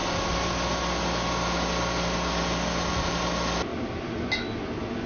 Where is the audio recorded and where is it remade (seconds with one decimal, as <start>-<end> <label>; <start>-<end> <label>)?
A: 0.0-3.7 recorded; 3.7-4.3 remade; 4.3-5.1 recorded